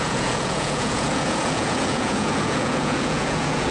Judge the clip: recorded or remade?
remade